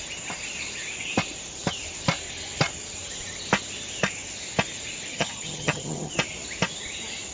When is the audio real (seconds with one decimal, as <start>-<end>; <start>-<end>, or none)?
0.0-5.1; 6.1-7.3